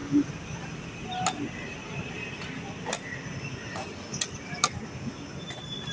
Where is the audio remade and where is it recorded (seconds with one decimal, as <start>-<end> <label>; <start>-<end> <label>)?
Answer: 0.0-5.9 recorded